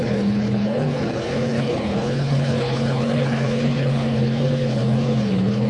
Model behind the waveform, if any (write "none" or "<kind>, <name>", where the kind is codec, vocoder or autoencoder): codec, HILCodec